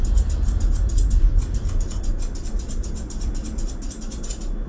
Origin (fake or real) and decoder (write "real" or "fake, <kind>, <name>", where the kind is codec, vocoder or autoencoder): real